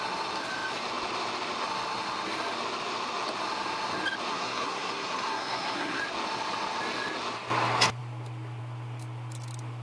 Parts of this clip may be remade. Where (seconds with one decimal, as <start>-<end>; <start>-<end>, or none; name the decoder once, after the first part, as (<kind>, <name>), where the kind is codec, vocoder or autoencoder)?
4.3-6.0 (codec, SNAC)